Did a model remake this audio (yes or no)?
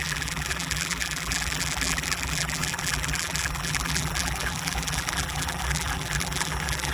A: yes